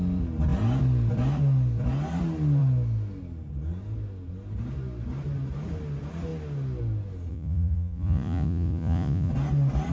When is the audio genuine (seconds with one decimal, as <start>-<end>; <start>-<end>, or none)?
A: 0.0-7.3; 9.3-9.9